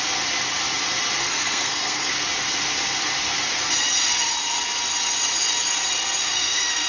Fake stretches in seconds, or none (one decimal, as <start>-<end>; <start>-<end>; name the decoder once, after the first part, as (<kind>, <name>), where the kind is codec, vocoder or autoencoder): 1.2-2.1 (codec, SNAC); 6.3-6.9

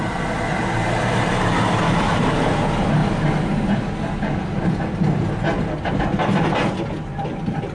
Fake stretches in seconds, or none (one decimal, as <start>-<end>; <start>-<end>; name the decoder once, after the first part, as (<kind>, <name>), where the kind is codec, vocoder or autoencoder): 0.6-2.5 (vocoder, BigVGAN v2)

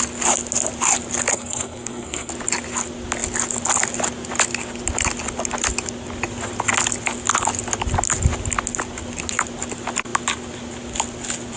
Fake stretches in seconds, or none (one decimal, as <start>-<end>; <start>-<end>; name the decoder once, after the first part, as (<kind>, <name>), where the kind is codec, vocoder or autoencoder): 1.3-2.3 (codec, SNAC)

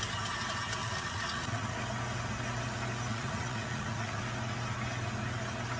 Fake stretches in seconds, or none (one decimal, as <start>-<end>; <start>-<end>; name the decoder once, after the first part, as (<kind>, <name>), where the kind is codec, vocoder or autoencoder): 0.8-1.8 (vocoder, Vocos); 3.1-4.2